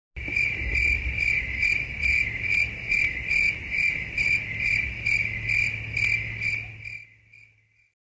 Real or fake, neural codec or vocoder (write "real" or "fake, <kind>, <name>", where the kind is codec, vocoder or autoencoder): real